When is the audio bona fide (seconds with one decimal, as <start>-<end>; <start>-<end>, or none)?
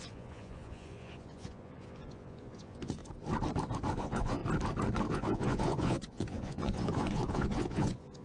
3.0-3.9; 4.4-5.1